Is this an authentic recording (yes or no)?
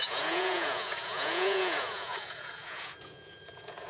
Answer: no